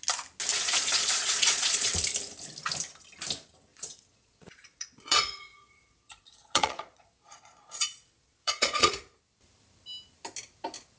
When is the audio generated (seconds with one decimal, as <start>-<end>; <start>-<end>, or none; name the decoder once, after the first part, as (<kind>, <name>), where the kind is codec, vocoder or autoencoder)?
0.5-1.9 (vocoder, Vocos); 3.7-8.9